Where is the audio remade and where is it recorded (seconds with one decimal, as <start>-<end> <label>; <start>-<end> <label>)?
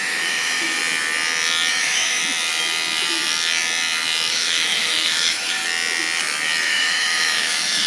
0.0-0.8 remade; 0.8-1.7 recorded; 1.7-2.2 remade; 2.2-4.3 recorded; 4.3-5.6 remade; 5.6-6.6 recorded; 6.6-7.9 remade